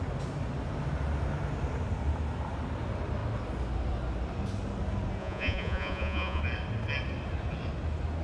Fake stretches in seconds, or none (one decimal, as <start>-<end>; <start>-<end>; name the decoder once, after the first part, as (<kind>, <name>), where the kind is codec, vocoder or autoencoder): 5.2-6.4 (vocoder, Vocos)